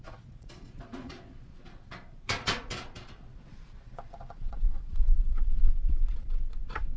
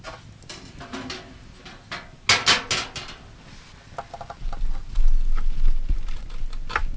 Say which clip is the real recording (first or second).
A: second